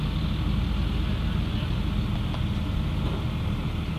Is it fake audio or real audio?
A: real